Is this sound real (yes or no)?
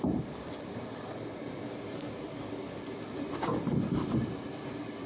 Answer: no